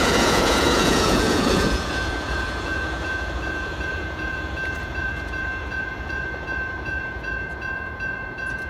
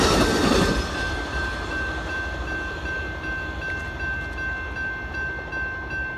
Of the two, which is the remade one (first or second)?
first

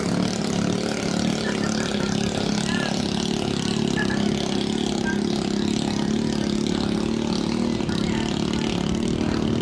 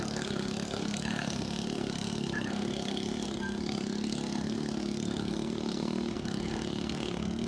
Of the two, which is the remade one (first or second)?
second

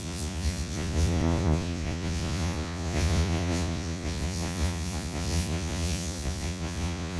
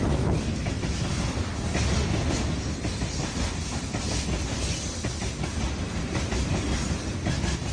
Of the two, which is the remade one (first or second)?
first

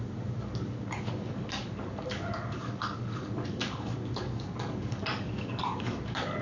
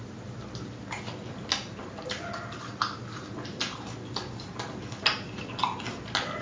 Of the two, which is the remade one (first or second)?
first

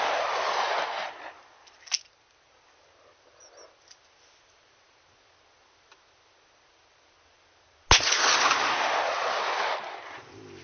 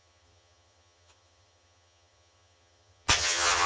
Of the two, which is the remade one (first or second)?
second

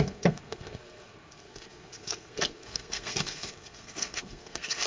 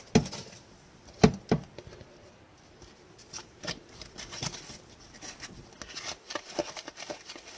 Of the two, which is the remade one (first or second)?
first